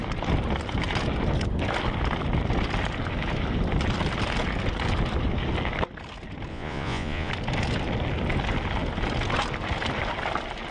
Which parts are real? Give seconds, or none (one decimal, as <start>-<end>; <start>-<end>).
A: 0.0-6.5; 7.3-10.7